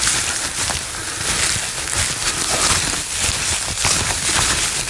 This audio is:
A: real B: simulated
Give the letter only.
A